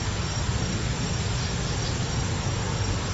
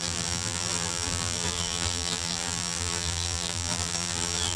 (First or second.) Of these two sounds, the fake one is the second